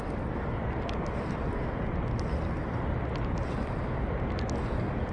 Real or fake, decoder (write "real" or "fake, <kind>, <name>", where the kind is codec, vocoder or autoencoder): real